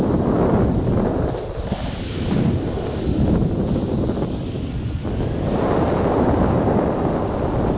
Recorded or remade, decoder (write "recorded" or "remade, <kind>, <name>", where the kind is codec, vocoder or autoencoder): recorded